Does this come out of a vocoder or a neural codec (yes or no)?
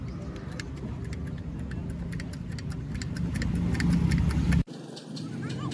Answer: no